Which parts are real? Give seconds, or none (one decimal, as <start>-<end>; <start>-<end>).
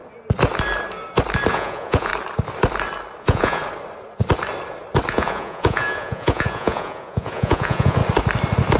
0.0-1.5; 2.1-3.2; 3.6-5.1; 8.0-8.8